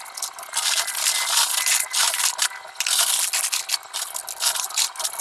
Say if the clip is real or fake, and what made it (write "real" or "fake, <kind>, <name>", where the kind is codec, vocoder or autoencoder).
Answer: real